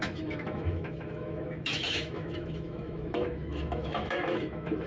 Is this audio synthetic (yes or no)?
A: yes